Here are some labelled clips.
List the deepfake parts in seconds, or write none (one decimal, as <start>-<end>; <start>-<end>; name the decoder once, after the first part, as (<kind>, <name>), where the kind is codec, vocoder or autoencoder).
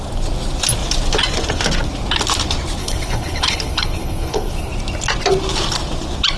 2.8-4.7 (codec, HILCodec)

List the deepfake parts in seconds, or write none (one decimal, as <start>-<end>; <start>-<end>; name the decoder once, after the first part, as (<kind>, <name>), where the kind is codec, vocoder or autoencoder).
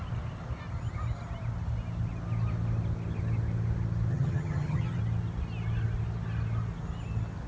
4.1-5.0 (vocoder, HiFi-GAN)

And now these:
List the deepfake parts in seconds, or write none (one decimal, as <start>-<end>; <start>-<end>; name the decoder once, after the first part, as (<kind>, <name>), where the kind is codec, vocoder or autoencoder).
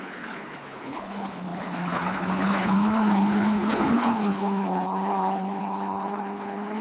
0.0-6.8 (codec, HILCodec)